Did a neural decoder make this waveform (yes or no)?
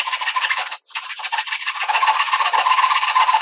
no